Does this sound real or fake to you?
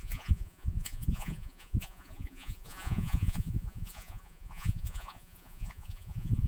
fake